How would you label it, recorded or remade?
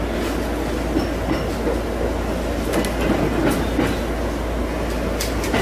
recorded